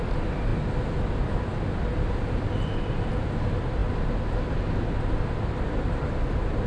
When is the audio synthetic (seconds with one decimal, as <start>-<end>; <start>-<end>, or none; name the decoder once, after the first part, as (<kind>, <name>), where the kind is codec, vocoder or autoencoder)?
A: none